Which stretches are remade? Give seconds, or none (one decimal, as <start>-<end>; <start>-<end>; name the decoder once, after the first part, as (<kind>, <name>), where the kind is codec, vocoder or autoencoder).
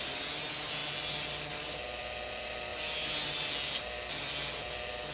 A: none